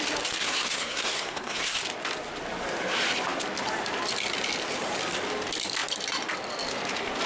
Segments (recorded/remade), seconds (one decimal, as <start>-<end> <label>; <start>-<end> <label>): 0.0-0.4 recorded; 0.4-1.8 remade; 1.8-7.3 recorded